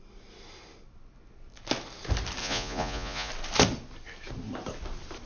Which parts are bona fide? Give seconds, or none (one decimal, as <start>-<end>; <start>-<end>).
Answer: 0.0-2.4; 3.3-5.3